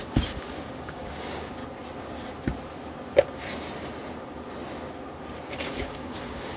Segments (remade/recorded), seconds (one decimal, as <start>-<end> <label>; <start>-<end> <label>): 0.0-1.6 remade; 1.6-5.6 recorded; 5.6-6.6 remade